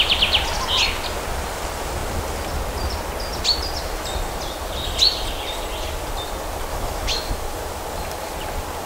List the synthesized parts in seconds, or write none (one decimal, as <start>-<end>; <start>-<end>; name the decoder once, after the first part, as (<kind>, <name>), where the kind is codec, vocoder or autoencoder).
6.7-7.3 (autoencoder, DAC-VAE)